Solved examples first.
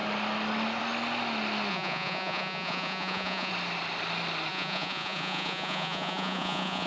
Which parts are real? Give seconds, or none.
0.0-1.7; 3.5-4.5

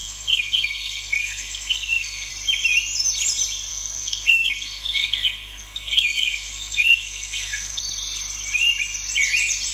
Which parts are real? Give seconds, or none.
2.3-3.7; 7.8-9.7

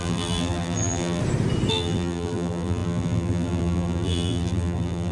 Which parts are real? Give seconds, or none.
1.2-1.7